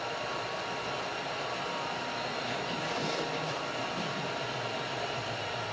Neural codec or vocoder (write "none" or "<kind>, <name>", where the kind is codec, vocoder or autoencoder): none